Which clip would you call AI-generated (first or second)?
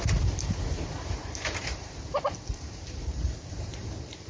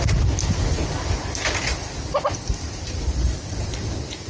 first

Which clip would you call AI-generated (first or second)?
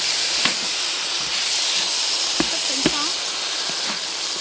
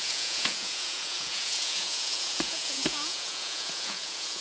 second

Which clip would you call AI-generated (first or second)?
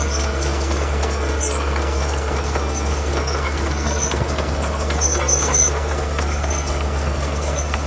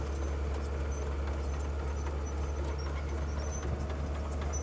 first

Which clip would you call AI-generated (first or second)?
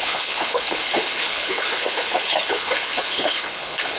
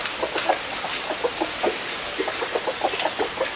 first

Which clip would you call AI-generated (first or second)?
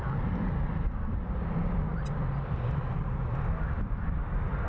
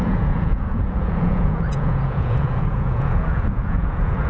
second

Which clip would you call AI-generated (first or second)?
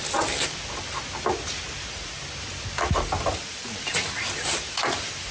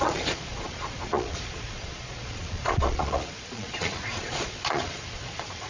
second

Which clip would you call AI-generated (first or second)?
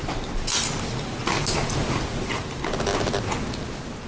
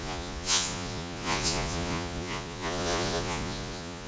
second